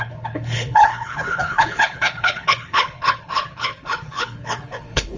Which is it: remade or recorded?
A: remade